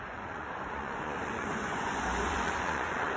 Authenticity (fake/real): fake